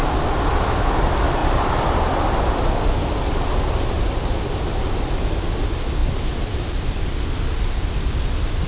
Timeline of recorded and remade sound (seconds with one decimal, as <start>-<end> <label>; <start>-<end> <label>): 0.0-1.4 recorded; 1.4-1.9 remade; 1.9-8.7 recorded

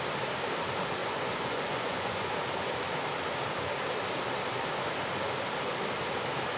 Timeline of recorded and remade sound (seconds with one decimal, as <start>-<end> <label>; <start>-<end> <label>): 0.0-1.0 recorded; 1.0-2.3 remade; 2.3-6.6 recorded

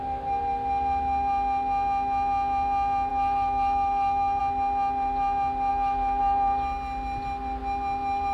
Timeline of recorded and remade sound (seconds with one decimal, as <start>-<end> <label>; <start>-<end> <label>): 0.0-3.1 recorded; 3.1-4.4 remade; 4.4-5.7 recorded; 5.7-6.2 remade; 6.2-8.3 recorded

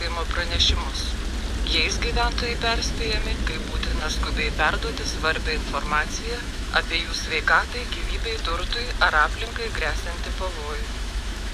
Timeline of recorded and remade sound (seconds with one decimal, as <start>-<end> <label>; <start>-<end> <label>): 0.0-2.4 recorded; 2.4-3.1 remade; 3.1-3.9 recorded; 3.9-8.1 remade; 8.1-10.3 recorded; 10.3-11.5 remade